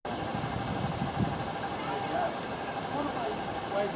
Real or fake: real